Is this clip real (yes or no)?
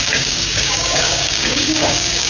no